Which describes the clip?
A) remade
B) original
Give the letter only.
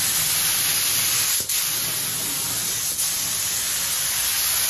B